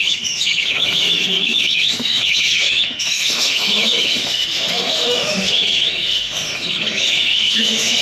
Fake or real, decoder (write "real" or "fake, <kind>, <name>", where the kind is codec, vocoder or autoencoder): fake, autoencoder, DAC-VAE